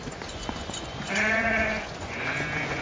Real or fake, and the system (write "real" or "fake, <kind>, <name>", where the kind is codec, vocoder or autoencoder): fake, vocoder, Vocos